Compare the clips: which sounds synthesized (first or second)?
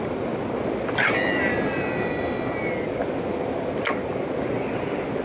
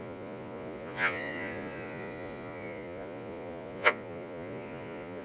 second